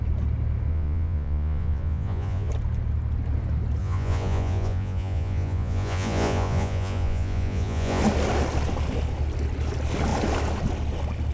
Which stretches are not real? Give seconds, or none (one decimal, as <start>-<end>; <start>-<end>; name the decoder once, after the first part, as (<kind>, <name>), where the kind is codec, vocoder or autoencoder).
0.7-2.5 (vocoder, Vocos); 3.8-8.0